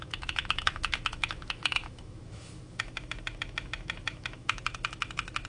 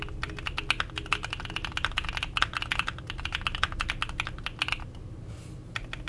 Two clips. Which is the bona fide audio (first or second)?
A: second